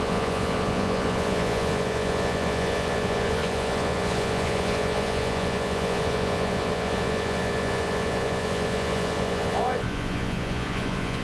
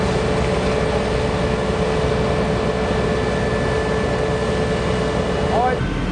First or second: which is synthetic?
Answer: first